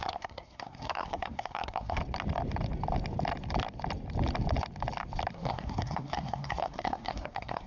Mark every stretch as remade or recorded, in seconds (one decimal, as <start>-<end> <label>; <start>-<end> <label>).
0.0-2.0 remade; 2.0-5.3 recorded; 5.3-7.7 remade